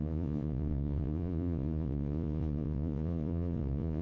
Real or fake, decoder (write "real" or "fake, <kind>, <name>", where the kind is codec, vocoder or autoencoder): fake, vocoder, Vocos